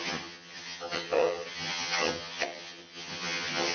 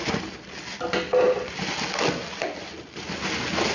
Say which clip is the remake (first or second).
first